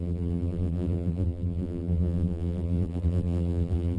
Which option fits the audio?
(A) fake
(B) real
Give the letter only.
A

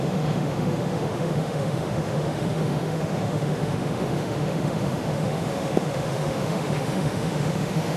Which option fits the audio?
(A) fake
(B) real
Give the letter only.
A